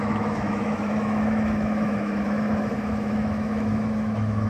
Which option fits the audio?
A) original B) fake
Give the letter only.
B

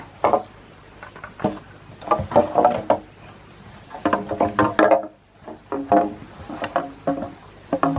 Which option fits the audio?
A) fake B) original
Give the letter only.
B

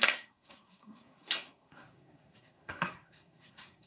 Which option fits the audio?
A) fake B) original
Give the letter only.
A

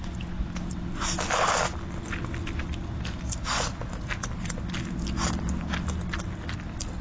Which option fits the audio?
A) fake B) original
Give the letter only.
B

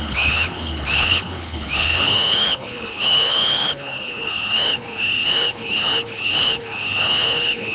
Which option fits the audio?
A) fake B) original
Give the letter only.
A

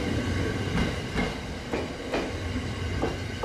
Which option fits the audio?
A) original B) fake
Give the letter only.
A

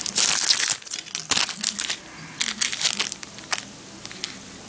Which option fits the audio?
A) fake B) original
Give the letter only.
B